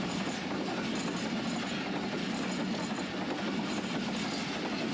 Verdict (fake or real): real